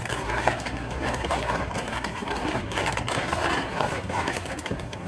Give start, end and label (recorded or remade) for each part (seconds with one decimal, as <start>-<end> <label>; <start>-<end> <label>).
0.0-5.1 remade